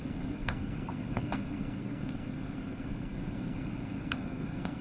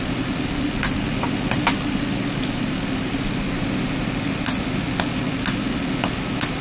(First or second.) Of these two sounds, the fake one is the first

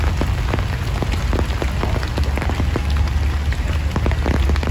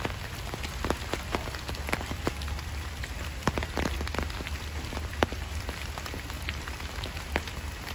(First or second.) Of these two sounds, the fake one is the second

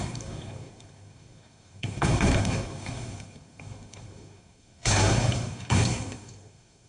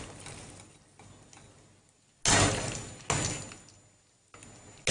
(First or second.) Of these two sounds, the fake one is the first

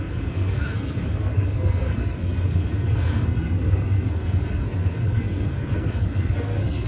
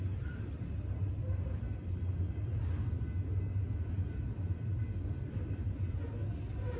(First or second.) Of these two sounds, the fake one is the first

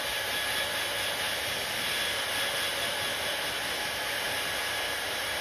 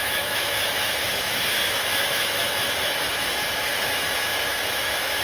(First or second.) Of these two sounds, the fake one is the second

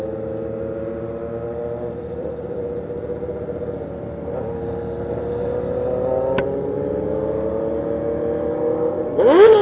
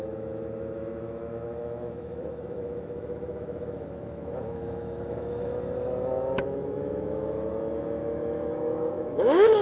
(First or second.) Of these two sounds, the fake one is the second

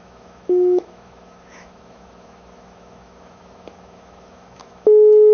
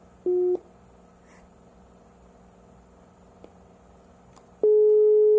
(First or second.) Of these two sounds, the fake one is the first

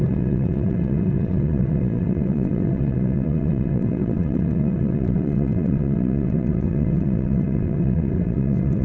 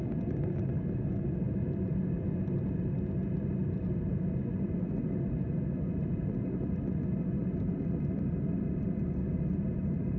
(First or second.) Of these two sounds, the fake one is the first